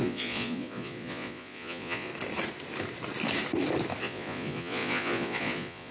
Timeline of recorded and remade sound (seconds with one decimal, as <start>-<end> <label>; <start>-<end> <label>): 0.0-2.1 remade; 2.1-4.0 recorded; 4.0-5.9 remade